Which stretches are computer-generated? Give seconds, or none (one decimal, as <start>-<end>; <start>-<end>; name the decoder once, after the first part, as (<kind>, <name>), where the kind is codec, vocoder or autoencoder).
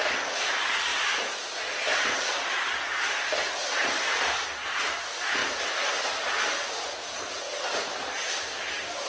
none